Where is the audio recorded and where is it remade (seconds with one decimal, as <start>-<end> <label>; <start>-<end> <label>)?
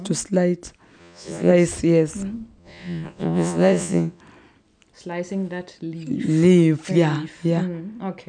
0.0-1.0 recorded; 1.0-1.5 remade; 1.5-2.6 recorded; 2.6-4.2 remade; 4.2-8.3 recorded